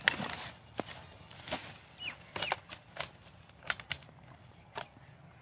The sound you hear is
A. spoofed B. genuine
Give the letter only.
B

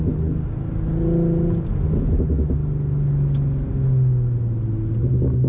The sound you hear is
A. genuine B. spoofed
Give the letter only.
A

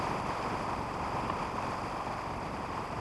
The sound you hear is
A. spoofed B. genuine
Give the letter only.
B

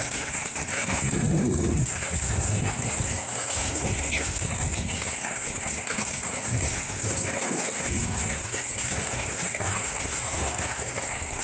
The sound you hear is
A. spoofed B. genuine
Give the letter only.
A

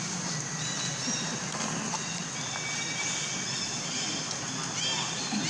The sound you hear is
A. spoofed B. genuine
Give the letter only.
B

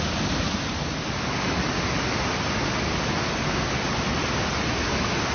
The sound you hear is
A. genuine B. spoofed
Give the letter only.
A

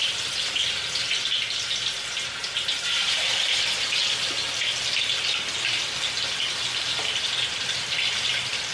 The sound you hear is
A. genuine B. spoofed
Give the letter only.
A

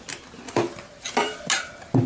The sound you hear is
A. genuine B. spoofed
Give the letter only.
A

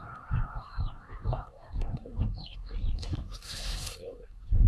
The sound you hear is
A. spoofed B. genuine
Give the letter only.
A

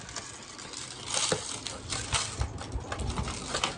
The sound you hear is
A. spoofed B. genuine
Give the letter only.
B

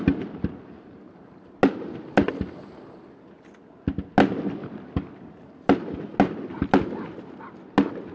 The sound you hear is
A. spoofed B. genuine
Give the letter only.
B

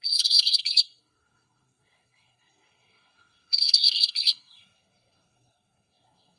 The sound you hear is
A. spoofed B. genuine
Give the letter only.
A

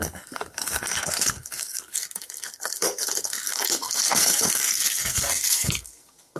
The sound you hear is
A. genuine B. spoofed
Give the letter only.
B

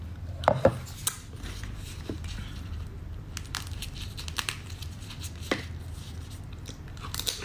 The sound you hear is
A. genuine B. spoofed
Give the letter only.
A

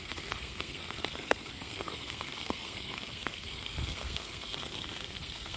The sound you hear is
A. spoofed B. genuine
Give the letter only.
A